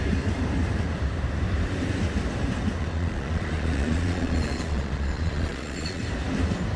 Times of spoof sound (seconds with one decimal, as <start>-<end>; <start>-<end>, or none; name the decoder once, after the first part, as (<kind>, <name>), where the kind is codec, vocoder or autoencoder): 2.8-6.0 (vocoder, Vocos)

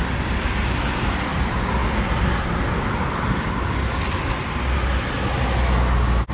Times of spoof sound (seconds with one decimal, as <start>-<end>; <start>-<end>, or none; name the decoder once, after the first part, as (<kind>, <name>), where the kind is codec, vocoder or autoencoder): none

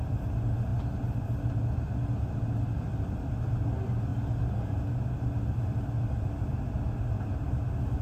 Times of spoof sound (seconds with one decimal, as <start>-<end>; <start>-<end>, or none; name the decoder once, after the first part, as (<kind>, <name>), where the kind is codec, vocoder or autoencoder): none

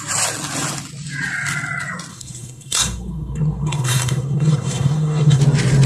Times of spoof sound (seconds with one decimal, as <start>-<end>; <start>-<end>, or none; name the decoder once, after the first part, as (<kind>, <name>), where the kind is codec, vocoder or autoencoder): 2.1-5.4 (codec, SNAC)

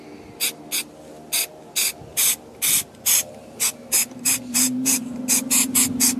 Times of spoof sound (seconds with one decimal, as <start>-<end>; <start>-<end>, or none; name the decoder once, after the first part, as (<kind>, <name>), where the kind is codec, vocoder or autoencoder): 2.1-5.8 (vocoder, BigVGAN v2)